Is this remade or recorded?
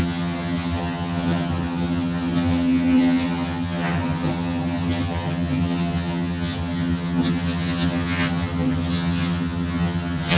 remade